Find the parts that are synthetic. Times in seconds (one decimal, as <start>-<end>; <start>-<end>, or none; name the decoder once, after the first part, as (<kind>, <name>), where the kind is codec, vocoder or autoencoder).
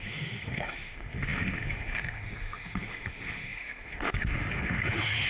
0.0-5.3 (autoencoder, DAC-VAE)